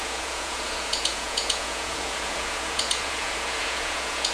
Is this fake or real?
fake